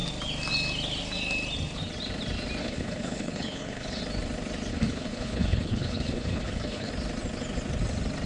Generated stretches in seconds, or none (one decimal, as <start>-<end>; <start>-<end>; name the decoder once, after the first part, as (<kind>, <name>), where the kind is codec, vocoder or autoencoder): 2.6-4.0 (codec, HILCodec); 4.7-6.9